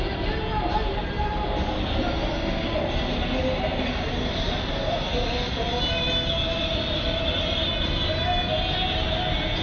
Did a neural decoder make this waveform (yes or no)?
no